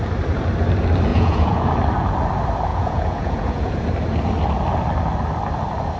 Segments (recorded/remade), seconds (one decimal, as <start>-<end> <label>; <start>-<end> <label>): 0.0-1.1 recorded; 1.1-1.7 remade; 1.7-2.7 recorded; 2.7-3.7 remade; 3.7-6.0 recorded